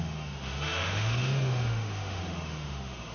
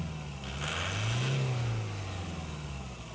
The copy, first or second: first